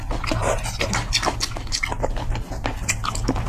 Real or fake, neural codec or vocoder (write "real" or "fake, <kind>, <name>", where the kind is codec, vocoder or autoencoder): real